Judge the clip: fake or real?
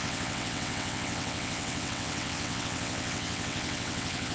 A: fake